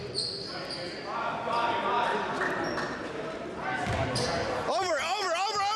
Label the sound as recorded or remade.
recorded